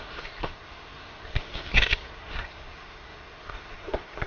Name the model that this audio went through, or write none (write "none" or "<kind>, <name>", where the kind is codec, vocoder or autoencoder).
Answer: codec, SNAC